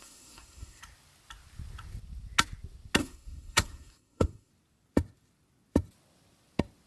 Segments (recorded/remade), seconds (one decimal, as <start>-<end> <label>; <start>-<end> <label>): 0.0-0.8 remade; 0.8-3.0 recorded; 3.0-4.5 remade; 4.5-6.9 recorded